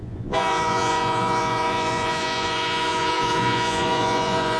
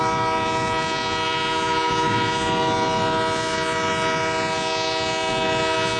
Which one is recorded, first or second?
second